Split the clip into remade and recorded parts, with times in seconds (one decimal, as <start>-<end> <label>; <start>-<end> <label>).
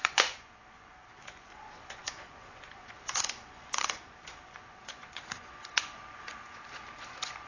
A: 0.0-7.5 remade